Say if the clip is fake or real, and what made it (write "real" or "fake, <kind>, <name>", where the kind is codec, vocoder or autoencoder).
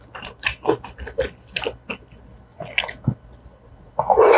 real